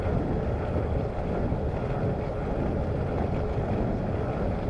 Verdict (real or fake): real